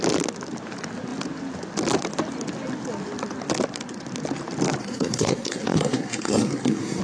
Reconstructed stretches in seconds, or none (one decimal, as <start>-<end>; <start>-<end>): 4.8-7.0